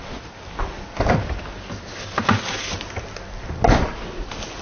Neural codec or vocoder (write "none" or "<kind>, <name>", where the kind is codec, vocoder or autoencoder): none